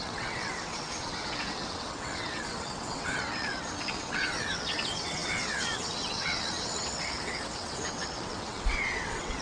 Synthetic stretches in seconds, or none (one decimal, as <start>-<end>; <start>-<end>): 0.0-9.4